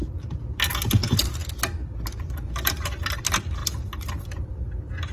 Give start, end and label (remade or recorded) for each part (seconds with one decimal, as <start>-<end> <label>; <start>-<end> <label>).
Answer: 0.0-3.6 recorded; 3.6-4.5 remade; 4.5-5.1 recorded